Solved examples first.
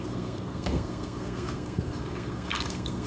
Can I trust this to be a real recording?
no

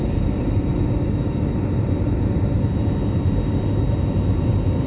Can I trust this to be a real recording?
yes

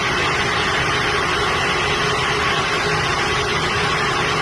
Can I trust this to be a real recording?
yes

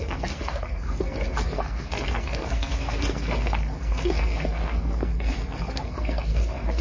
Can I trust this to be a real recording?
no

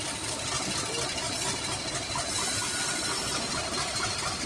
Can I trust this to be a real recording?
yes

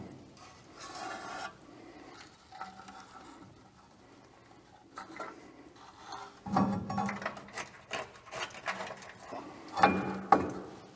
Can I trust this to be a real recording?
yes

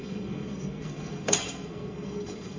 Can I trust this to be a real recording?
no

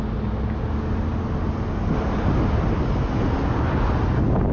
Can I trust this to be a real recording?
yes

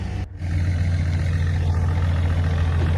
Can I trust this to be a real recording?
yes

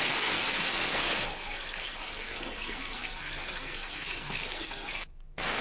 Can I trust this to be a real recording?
no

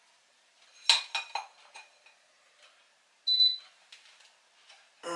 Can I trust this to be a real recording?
yes